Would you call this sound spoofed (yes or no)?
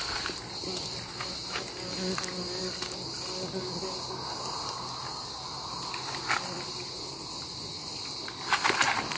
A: no